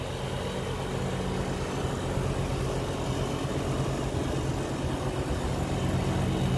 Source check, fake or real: real